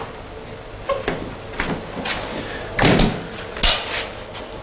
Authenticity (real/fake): real